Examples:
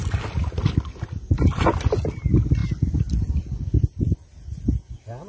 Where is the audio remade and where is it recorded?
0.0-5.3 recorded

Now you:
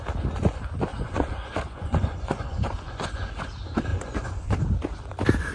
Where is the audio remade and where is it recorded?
0.0-0.9 recorded; 0.9-3.3 remade; 3.3-3.9 recorded; 3.9-4.6 remade; 4.6-5.5 recorded

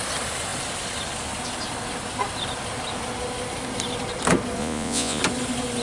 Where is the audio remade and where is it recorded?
0.0-4.6 recorded; 4.6-5.2 remade; 5.2-5.8 recorded

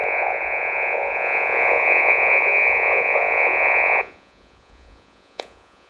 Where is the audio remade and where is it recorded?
0.0-5.9 remade

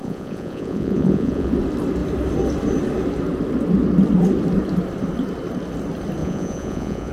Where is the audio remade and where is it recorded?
0.0-1.5 remade; 1.5-6.2 recorded; 6.2-7.1 remade